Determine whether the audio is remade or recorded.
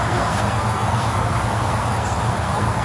remade